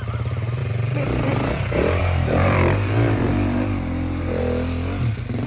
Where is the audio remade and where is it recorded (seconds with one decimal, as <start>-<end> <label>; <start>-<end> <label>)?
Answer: 0.0-0.6 recorded; 0.6-1.5 remade; 1.5-2.0 recorded; 2.0-4.4 remade; 4.4-5.5 recorded